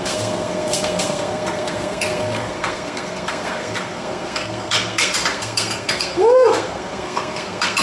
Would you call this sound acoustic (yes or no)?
no